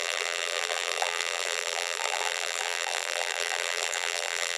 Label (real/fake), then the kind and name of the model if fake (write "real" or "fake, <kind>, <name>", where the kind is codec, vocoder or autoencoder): fake, vocoder, BigVGAN v2